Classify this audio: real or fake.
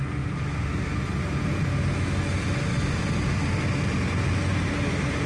real